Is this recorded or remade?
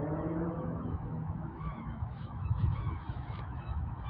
remade